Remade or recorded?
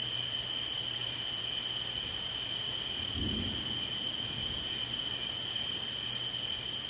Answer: recorded